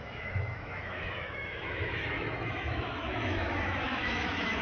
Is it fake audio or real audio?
fake